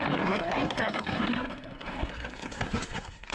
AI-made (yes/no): yes